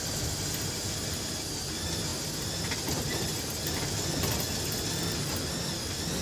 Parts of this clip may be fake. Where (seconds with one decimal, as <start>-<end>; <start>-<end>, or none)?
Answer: none